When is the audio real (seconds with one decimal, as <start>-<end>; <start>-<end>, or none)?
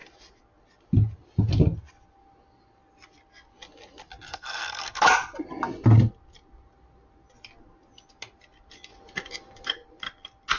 0.0-4.3; 5.0-10.6